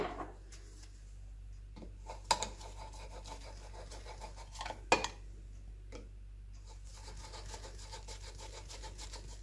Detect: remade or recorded recorded